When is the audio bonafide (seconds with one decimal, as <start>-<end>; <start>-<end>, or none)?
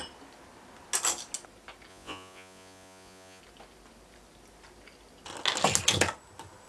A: 0.0-1.9; 3.4-6.7